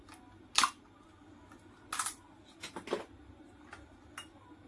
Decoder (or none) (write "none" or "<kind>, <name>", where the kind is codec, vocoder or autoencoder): none